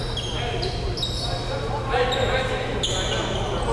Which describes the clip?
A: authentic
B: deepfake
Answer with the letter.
A